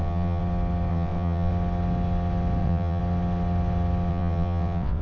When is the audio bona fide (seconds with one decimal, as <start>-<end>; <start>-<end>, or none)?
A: 0.4-0.9; 1.5-2.6; 3.0-4.1